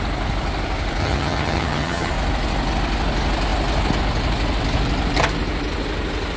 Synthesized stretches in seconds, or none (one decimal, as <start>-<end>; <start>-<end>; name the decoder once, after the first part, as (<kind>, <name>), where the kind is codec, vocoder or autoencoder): 1.0-2.1 (vocoder, HiFi-GAN)